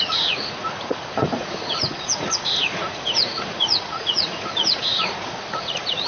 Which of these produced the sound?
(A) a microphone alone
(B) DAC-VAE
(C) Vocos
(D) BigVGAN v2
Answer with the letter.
C